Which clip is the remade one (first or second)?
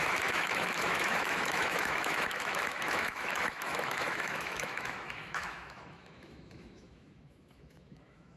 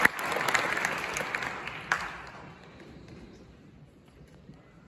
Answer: first